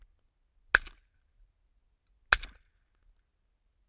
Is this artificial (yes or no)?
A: no